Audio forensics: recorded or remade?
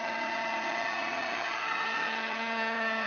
remade